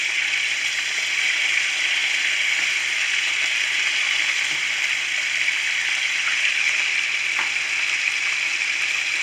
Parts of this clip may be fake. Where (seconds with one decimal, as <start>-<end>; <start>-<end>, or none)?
0.0-2.0; 3.7-9.2